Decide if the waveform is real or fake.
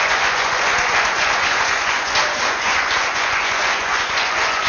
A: fake